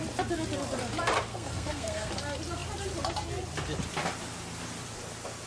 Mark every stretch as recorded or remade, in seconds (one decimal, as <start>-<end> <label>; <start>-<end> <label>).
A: 0.0-1.3 recorded; 1.3-2.1 remade; 2.1-5.5 recorded